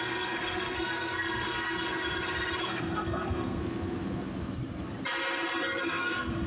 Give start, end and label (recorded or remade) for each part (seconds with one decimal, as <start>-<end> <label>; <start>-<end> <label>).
0.0-1.9 remade; 1.9-2.6 recorded; 2.6-3.6 remade; 3.6-5.8 recorded; 5.8-6.5 remade